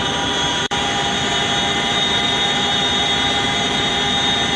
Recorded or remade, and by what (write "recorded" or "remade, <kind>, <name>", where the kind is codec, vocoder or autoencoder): remade, vocoder, BigVGAN v2